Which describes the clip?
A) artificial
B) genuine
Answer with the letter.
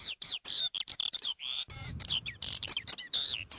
A